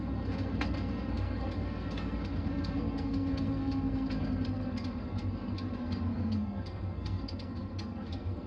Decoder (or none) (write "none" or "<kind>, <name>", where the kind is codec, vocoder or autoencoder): codec, SNAC